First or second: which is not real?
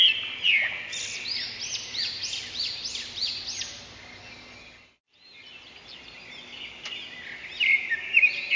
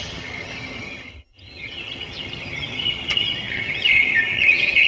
second